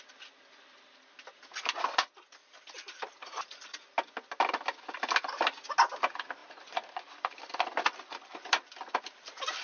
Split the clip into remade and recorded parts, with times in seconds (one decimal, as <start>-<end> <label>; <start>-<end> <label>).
0.0-2.4 recorded; 2.4-3.6 remade; 3.6-6.4 recorded; 6.4-9.6 remade